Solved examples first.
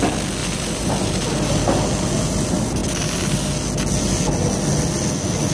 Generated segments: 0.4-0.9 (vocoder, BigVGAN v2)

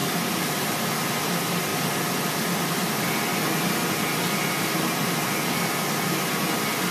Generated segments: none

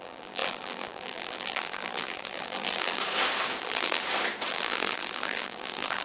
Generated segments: 0.0-3.0 (vocoder, BigVGAN v2); 3.6-4.0; 4.5-6.0